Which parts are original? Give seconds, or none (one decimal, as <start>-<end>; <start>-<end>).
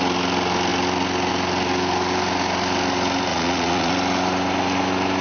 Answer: 0.0-3.3; 3.9-5.2